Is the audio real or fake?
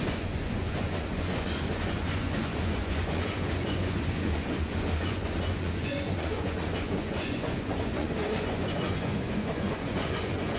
fake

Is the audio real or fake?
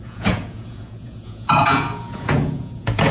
fake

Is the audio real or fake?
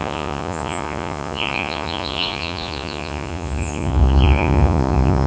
fake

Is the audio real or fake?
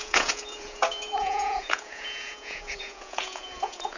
fake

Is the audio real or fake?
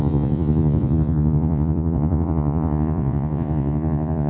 fake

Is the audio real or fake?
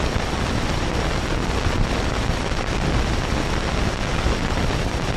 real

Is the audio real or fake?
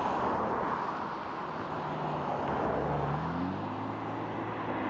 real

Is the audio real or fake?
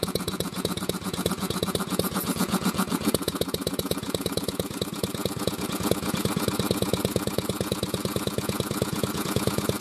fake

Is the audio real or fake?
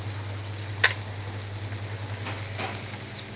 real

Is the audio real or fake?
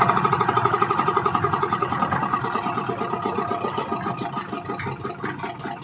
real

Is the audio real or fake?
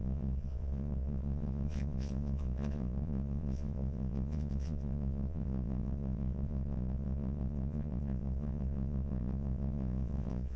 fake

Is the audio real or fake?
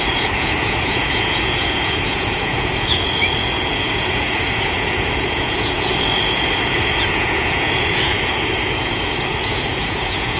fake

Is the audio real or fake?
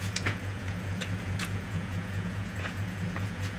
fake